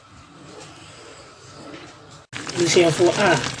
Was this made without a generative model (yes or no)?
yes